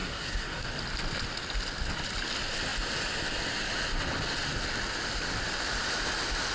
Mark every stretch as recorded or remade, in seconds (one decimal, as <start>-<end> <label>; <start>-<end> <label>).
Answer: 0.0-0.7 remade; 0.7-6.5 recorded